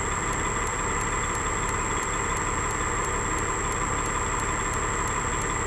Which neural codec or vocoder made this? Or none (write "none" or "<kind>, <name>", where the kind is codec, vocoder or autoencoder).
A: vocoder, BigVGAN v2